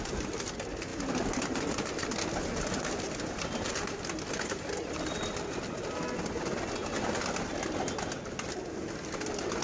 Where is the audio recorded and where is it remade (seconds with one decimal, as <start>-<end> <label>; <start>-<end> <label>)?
0.0-9.6 recorded